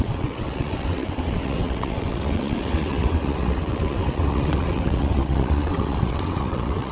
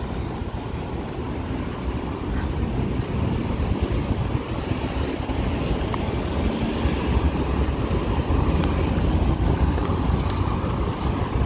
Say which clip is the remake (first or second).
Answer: first